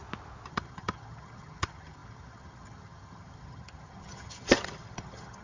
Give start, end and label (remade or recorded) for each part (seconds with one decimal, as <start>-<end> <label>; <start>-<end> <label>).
0.0-0.5 recorded; 0.5-5.4 remade